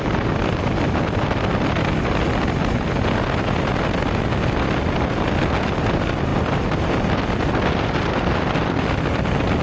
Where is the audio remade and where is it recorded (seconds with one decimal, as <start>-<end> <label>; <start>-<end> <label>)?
0.0-9.6 recorded